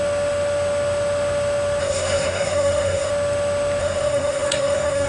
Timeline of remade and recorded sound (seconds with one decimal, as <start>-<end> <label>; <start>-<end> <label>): 0.0-1.8 recorded; 1.8-3.1 remade; 3.1-3.8 recorded; 3.8-5.1 remade